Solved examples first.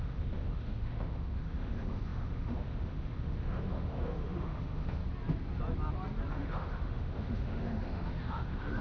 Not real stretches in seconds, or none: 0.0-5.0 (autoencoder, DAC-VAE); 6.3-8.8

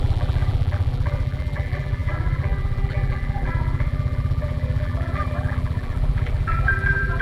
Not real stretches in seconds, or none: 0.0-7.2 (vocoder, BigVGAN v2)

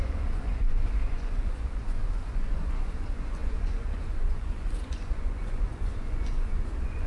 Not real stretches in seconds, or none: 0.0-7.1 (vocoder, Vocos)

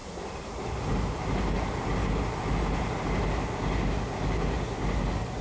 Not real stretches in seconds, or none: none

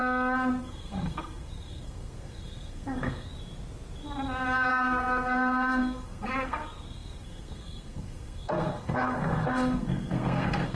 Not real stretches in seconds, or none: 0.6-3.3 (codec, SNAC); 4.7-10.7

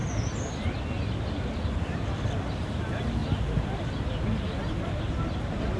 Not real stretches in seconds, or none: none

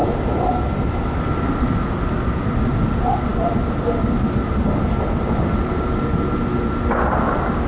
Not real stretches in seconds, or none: none